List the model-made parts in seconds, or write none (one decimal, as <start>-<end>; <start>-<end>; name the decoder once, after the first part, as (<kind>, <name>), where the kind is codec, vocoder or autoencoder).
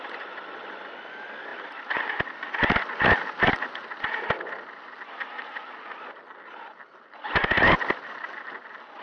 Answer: none